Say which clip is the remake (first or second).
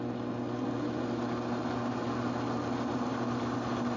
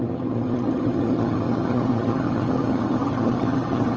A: second